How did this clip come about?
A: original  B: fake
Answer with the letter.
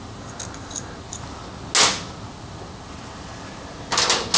A